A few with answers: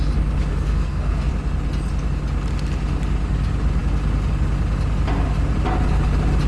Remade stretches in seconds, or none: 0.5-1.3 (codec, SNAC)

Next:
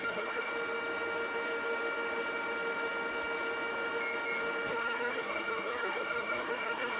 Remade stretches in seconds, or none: 0.0-0.5 (codec, SNAC); 4.7-7.0

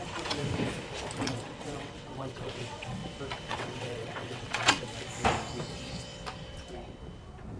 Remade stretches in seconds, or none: 0.0-0.4 (vocoder, WaveNeXt); 1.2-3.0; 3.5-4.9

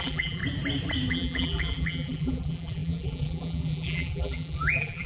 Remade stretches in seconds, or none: 0.0-0.4 (vocoder, BigVGAN v2); 1.1-5.1

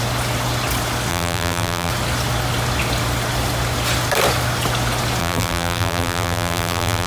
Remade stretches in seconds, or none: 1.1-1.9 (vocoder, BigVGAN v2); 5.2-7.1

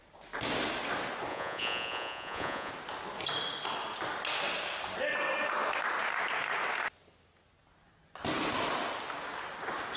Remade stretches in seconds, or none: 1.3-2.7 (vocoder, Vocos)